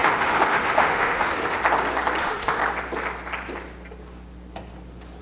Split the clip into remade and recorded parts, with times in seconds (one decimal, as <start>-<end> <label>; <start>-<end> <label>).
0.0-1.6 remade; 1.6-2.2 recorded; 2.2-2.6 remade; 2.6-5.2 recorded

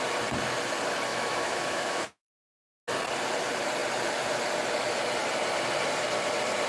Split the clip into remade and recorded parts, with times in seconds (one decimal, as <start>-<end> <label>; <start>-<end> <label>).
0.0-1.1 recorded; 1.1-2.8 remade; 2.8-6.7 recorded

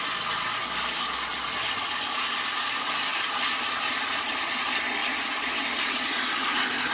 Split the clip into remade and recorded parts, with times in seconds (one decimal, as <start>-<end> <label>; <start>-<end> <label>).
0.0-6.9 recorded

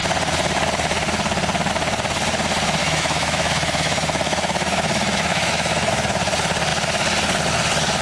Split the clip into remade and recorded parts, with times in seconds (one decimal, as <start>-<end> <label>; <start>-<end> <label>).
0.0-2.8 recorded; 2.8-5.9 remade; 5.9-8.0 recorded

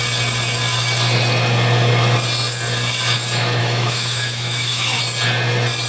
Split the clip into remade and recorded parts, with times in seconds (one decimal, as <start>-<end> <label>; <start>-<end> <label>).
0.0-3.6 recorded; 3.6-5.0 remade; 5.0-5.9 recorded

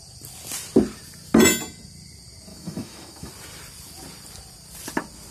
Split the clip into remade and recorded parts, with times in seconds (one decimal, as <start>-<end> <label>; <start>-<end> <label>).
0.0-2.5 recorded; 2.5-3.3 remade; 3.3-5.3 recorded